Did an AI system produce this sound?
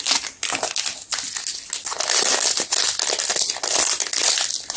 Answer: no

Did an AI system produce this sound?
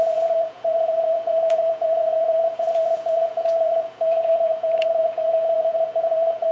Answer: yes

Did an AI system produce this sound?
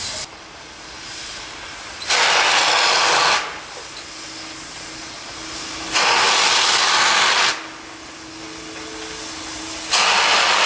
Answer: no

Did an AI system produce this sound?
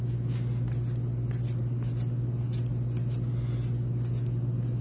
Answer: no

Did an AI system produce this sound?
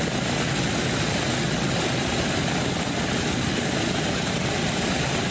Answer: no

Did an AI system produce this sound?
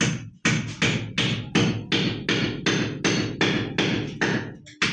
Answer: no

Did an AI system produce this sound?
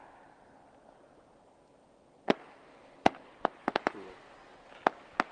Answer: no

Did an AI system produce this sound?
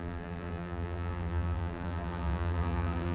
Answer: yes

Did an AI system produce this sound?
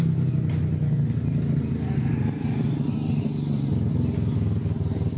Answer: no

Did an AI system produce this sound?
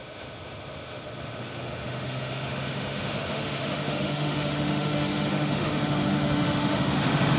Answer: yes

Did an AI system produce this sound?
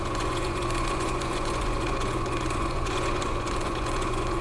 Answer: yes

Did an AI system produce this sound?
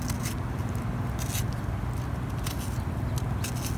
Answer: no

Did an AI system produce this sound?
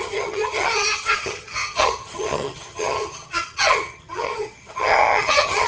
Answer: yes